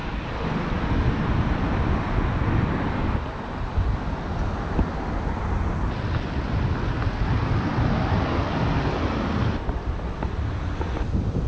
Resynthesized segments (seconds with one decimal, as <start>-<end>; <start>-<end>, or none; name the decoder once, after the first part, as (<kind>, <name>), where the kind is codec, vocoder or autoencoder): none